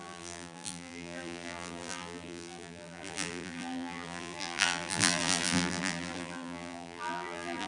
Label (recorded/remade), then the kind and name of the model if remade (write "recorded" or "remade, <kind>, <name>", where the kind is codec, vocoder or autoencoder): remade, vocoder, BigVGAN v2